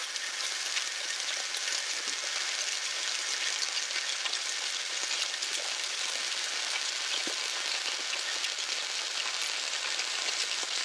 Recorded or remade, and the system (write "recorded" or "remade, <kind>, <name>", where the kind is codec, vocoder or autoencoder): recorded